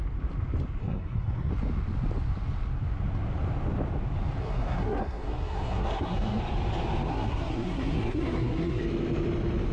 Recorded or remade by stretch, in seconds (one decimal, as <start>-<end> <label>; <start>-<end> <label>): 0.0-0.8 recorded; 0.8-1.5 remade; 1.5-4.4 recorded; 4.4-6.4 remade; 6.4-7.1 recorded; 7.1-8.8 remade; 8.8-9.7 recorded